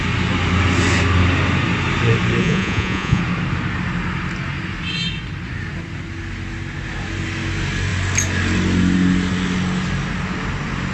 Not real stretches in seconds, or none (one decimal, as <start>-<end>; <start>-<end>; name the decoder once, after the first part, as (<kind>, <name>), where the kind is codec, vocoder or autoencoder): 2.4-3.2 (vocoder, Vocos)

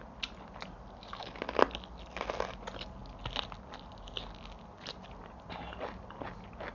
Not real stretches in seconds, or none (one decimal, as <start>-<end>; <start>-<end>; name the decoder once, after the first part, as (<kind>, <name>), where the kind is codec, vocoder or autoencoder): none